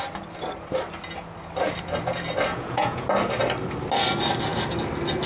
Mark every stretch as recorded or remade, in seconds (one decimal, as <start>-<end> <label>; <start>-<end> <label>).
0.0-2.5 recorded; 2.5-3.1 remade; 3.1-5.3 recorded